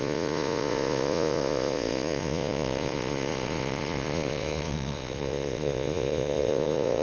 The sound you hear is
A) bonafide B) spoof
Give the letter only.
B